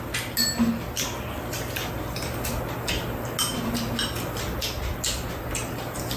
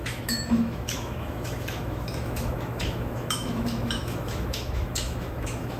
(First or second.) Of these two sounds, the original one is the first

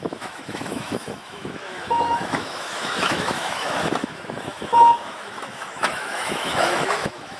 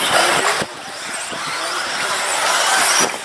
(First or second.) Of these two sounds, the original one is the second